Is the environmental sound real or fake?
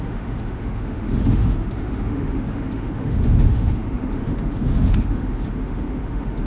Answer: fake